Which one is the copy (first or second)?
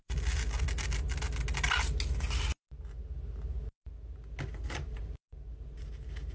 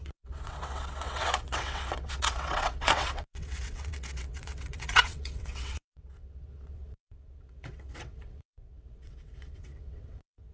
second